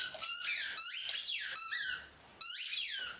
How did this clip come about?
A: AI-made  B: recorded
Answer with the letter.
B